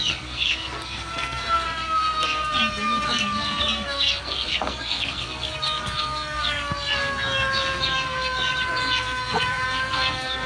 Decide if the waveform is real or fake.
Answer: fake